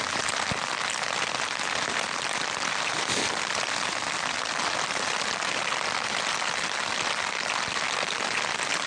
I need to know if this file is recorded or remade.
recorded